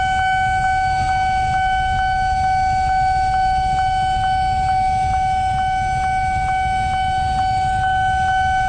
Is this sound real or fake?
real